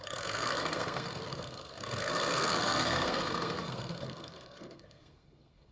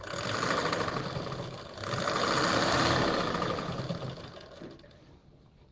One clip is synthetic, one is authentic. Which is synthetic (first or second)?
first